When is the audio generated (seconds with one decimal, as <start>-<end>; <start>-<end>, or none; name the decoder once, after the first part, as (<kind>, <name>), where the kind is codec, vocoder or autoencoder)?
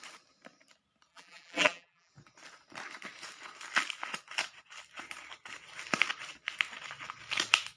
1.1-2.1 (vocoder, BigVGAN v2)